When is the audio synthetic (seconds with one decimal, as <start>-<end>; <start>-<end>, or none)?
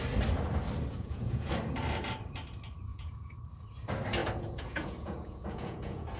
0.9-1.5; 2.9-3.4; 4.2-6.2